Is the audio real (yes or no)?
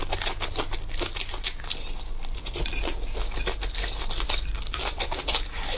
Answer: yes